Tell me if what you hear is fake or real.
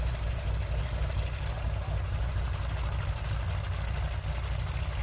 real